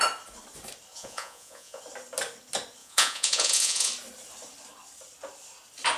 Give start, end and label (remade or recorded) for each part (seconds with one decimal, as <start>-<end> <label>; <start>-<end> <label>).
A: 0.0-0.9 recorded; 0.9-1.8 remade; 1.8-2.8 recorded; 2.8-3.9 remade; 3.9-6.0 recorded